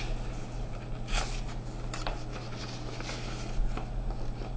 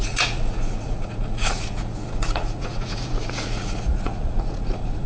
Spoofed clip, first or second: second